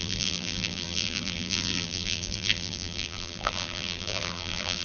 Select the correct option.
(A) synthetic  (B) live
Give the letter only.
A